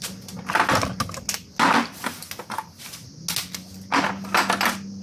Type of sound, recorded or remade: recorded